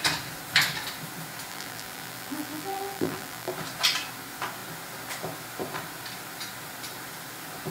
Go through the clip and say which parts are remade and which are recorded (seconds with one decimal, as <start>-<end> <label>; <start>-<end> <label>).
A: 0.0-1.5 recorded; 1.5-3.5 remade; 3.5-7.7 recorded